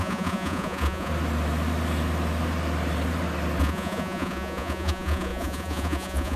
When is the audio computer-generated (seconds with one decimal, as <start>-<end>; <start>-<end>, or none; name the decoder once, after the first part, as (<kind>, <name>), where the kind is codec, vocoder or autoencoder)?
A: 0.0-1.1 (vocoder, Vocos); 3.6-6.4